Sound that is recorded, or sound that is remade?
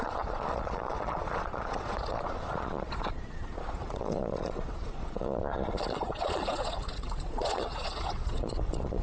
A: remade